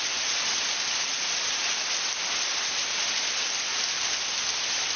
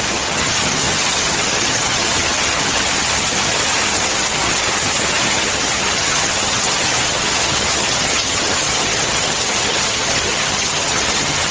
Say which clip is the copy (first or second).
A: second